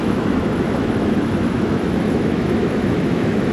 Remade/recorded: remade